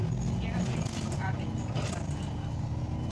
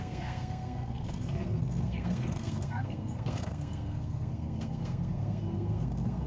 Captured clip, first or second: first